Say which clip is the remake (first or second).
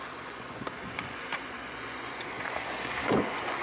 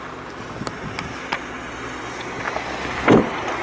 first